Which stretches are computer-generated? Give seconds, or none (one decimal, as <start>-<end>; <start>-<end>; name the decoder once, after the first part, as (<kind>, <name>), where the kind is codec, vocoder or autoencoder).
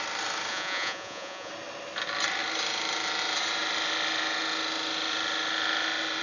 0.5-1.5 (vocoder, Vocos)